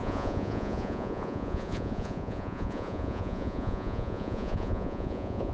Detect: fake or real fake